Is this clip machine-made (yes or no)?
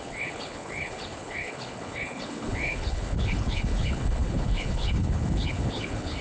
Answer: yes